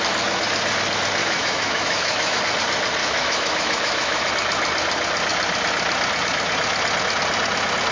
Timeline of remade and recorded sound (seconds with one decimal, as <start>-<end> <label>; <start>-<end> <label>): 0.0-1.2 recorded; 1.2-2.4 remade; 2.4-3.0 recorded; 3.0-4.3 remade; 4.3-7.9 recorded